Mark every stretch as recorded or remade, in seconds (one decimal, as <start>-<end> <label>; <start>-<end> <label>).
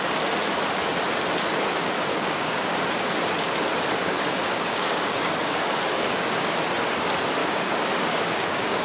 0.0-2.1 recorded; 2.1-2.8 remade; 2.8-4.0 recorded; 4.0-6.6 remade; 6.6-7.4 recorded; 7.4-8.8 remade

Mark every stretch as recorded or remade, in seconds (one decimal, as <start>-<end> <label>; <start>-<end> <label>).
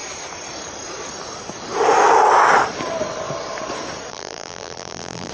0.0-4.1 recorded; 4.1-5.3 remade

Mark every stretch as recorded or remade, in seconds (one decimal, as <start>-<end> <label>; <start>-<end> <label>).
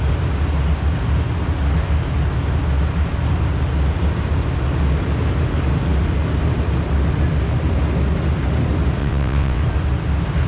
0.0-9.0 recorded; 9.0-9.6 remade; 9.6-10.5 recorded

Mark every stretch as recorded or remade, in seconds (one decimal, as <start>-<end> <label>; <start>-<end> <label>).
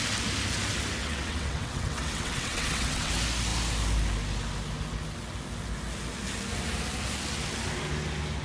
0.0-1.0 recorded; 1.0-3.1 remade; 3.1-8.4 recorded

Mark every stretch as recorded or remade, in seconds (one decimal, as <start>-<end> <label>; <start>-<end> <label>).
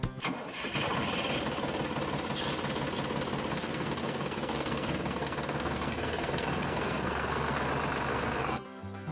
0.0-3.5 recorded; 3.5-7.7 remade; 7.7-8.1 recorded; 8.1-9.1 remade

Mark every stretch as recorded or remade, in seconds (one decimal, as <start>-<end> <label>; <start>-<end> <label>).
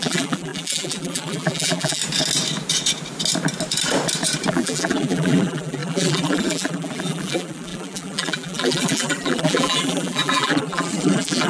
0.0-2.0 remade; 2.0-4.5 recorded; 4.5-11.5 remade